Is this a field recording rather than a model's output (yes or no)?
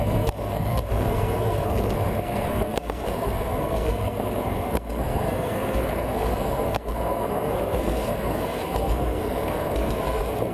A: no